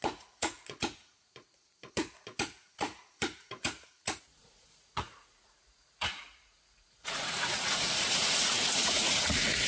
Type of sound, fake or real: fake